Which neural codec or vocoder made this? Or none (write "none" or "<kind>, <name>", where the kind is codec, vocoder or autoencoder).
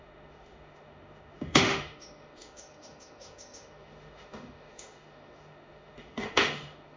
autoencoder, DAC-VAE